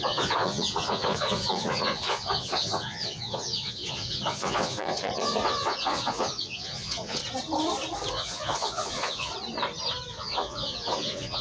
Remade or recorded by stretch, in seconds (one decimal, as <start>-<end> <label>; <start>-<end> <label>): 0.0-7.2 remade; 7.2-8.1 recorded; 8.1-9.3 remade; 9.3-10.1 recorded; 10.1-11.4 remade